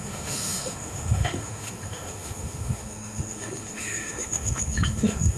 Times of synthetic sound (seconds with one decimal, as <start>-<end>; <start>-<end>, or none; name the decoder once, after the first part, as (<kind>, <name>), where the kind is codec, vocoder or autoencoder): 0.0-5.4 (autoencoder, DAC-VAE)